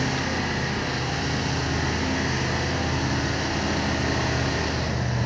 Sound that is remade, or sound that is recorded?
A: recorded